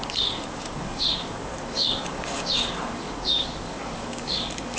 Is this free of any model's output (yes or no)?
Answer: no